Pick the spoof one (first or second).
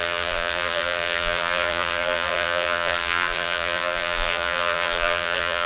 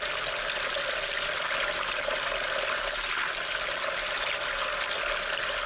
first